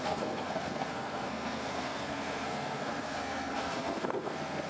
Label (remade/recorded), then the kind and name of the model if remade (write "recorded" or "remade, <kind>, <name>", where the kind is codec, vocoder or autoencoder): remade, codec, SNAC